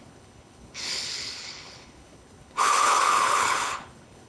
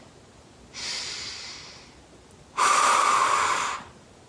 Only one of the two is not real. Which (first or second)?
first